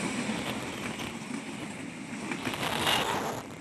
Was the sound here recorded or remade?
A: recorded